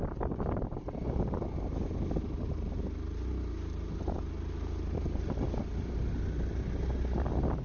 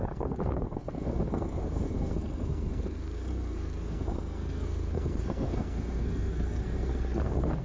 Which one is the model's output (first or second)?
second